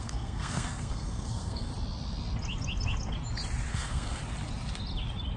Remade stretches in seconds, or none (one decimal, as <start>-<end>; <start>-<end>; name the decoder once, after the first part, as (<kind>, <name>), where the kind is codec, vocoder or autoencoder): 0.0-1.7 (codec, SNAC); 3.7-4.2